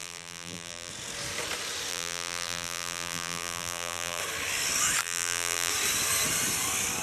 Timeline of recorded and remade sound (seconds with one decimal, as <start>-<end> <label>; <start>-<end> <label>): 0.0-0.9 remade; 0.9-1.9 recorded; 1.9-4.2 remade; 4.2-5.0 recorded; 5.0-5.7 remade; 5.7-7.0 recorded